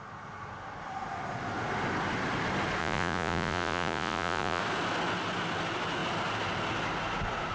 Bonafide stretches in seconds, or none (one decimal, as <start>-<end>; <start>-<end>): 0.0-2.8; 4.6-7.5